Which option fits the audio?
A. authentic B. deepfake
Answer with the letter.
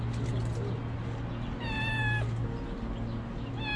A